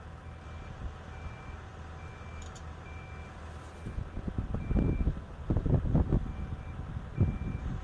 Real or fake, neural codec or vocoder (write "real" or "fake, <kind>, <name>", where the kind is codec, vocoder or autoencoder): real